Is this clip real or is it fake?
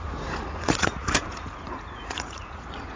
fake